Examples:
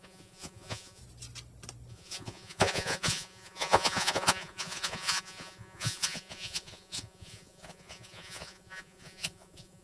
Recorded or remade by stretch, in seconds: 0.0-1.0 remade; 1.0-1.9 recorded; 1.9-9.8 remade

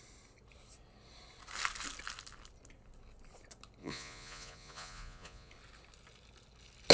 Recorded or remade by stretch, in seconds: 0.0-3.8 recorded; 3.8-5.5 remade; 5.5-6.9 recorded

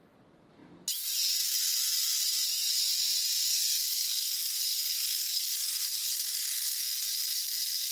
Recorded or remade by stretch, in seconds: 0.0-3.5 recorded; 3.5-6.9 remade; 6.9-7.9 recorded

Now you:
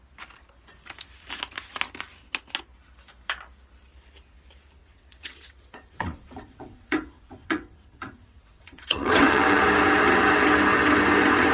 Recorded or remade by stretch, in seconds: 0.0-4.8 recorded; 4.8-9.6 remade; 9.6-11.5 recorded

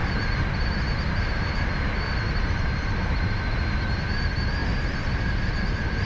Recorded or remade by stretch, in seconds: 0.0-4.6 recorded; 4.6-5.3 remade; 5.3-6.1 recorded

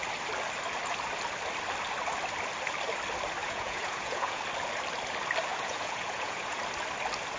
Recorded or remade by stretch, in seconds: 0.0-3.4 recorded; 3.4-4.4 remade; 4.4-5.5 recorded; 5.5-6.6 remade; 6.6-7.4 recorded

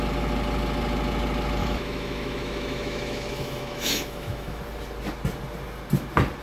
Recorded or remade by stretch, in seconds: 0.0-1.6 recorded; 1.6-4.6 remade; 4.6-6.4 recorded

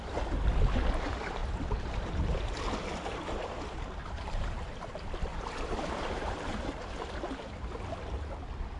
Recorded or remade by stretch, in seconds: 0.0-1.4 recorded; 1.4-2.1 remade; 2.1-4.0 recorded; 4.0-4.8 remade; 4.8-5.3 recorded; 5.3-7.4 remade; 7.4-8.8 recorded